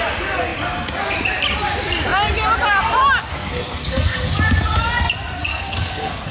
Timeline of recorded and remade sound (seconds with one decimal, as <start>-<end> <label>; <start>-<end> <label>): 0.0-3.3 recorded; 3.3-4.3 remade; 4.3-5.5 recorded; 5.5-6.3 remade